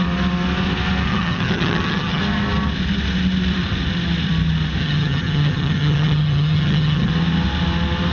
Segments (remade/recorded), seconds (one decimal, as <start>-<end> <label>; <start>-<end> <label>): 0.0-1.1 recorded; 1.1-2.2 remade; 2.2-4.8 recorded; 4.8-7.1 remade; 7.1-8.1 recorded